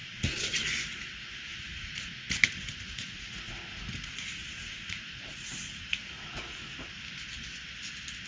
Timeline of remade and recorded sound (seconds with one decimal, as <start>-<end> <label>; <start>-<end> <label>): 0.0-0.7 remade; 0.7-1.5 recorded; 1.5-6.4 remade; 6.4-8.3 recorded